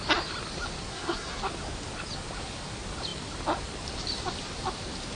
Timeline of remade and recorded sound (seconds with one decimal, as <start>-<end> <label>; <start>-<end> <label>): 0.0-0.9 recorded; 0.9-1.4 remade; 1.4-5.1 recorded